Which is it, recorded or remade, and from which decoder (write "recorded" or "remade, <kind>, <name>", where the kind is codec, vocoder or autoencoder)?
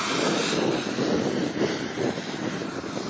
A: recorded